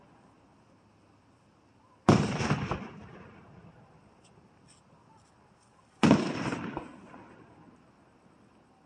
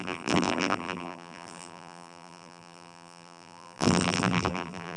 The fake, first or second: second